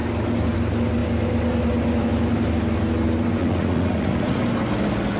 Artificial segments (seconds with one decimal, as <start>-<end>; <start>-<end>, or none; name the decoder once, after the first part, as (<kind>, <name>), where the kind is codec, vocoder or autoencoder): 3.4-4.4 (vocoder, Vocos)